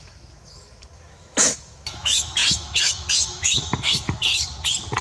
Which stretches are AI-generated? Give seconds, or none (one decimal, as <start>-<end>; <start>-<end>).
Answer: 0.0-4.3